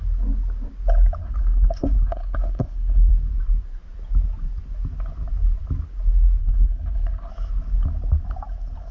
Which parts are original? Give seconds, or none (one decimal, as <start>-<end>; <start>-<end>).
0.0-1.2; 3.1-6.4; 7.3-8.9